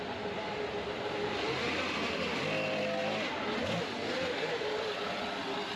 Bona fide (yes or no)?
yes